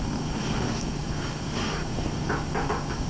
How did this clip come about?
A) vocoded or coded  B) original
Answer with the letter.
A